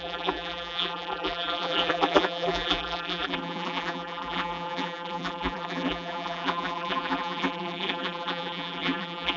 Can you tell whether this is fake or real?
fake